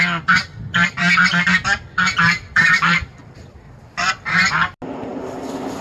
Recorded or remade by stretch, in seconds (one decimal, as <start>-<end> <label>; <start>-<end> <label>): 0.0-0.8 recorded; 0.8-3.2 remade; 3.2-4.0 recorded; 4.0-4.5 remade; 4.5-5.8 recorded